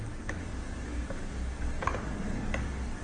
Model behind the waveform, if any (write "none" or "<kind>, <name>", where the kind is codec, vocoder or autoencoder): codec, DAC